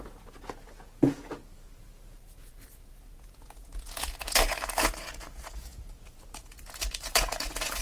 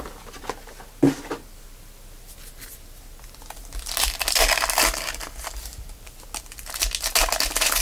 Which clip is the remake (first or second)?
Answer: first